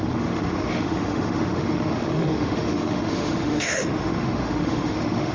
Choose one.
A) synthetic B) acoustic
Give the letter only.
A